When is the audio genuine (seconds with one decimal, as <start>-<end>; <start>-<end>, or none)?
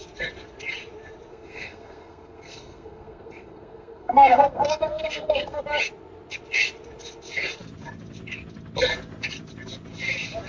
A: 0.0-1.3; 5.6-10.5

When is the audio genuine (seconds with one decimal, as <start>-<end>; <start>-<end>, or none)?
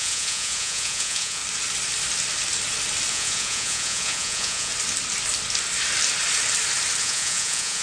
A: 1.4-3.1; 4.7-7.0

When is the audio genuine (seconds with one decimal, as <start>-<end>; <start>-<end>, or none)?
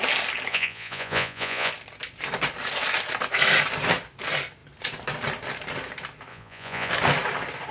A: 0.0-0.5; 1.7-6.3; 6.9-7.7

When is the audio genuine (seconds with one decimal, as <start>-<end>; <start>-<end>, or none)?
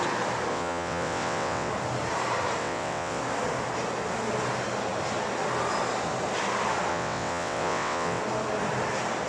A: 0.0-0.5; 1.7-2.6; 3.2-6.9; 8.2-9.3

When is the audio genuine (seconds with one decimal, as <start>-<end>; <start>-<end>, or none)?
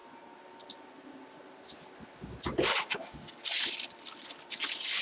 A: 0.0-5.0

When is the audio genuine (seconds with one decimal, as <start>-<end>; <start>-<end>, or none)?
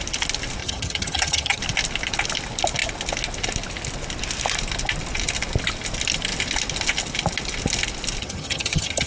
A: 0.0-0.6; 1.6-8.2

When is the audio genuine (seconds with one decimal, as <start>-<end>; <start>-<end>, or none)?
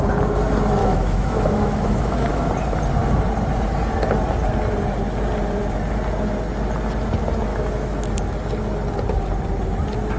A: 0.0-0.8; 2.5-7.5; 8.1-10.2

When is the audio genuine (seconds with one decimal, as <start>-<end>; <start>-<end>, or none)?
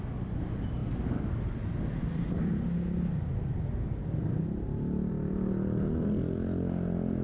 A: 0.0-7.2